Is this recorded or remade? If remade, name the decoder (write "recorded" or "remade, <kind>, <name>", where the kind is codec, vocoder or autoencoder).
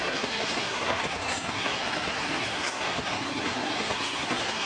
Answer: remade, codec, SNAC